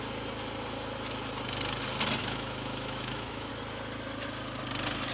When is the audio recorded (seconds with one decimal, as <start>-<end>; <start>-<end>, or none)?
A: 0.0-2.2; 3.5-5.1